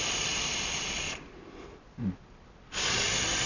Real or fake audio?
real